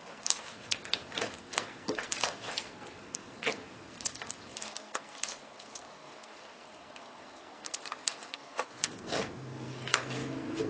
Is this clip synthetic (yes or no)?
yes